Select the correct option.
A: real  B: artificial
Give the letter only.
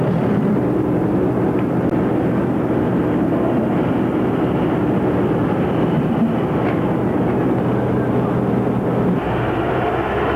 A